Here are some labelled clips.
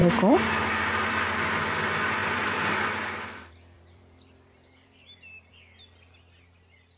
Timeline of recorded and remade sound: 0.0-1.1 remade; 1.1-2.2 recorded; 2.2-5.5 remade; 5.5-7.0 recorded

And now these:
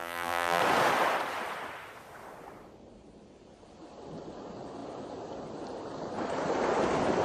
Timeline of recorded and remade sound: 0.0-0.6 remade; 0.6-7.2 recorded

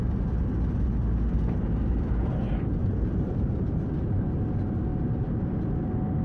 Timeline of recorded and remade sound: 0.0-2.8 recorded; 2.8-3.4 remade; 3.4-6.2 recorded

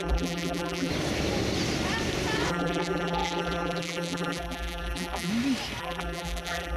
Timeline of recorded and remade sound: 0.0-0.9 remade; 0.9-2.5 recorded; 2.5-5.3 remade; 5.3-5.8 recorded; 5.8-6.8 remade